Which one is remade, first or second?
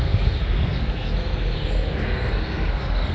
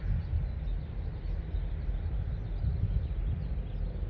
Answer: first